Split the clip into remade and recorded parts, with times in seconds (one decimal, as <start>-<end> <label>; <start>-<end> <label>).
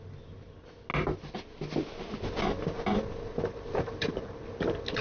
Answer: 0.0-5.0 recorded